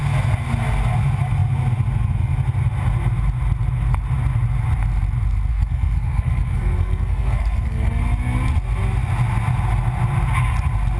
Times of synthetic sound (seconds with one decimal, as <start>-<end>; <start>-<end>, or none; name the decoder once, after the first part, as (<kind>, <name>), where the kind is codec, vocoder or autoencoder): 5.5-8.0 (codec, SNAC)